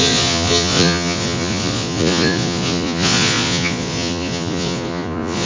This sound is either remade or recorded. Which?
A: remade